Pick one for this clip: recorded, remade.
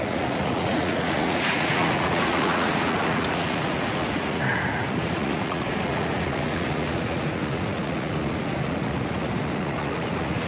remade